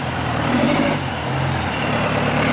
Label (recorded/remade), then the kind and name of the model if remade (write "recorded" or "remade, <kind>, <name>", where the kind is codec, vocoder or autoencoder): remade, vocoder, BigVGAN v2